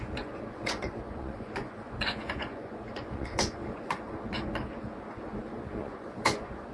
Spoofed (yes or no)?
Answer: yes